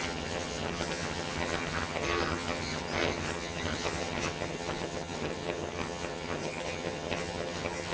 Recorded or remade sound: remade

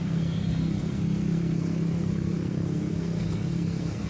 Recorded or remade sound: remade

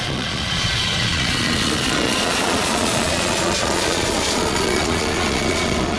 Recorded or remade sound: remade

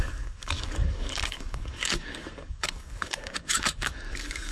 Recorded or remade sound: remade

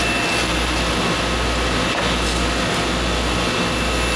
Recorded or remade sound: recorded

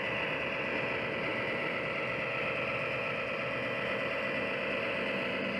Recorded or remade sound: recorded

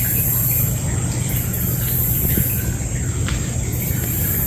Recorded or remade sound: recorded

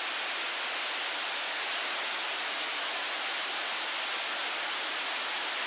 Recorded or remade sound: recorded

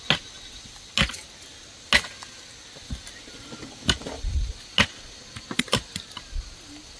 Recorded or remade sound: recorded